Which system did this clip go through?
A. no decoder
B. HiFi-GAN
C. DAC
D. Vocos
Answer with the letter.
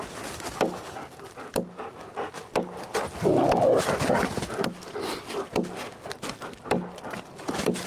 A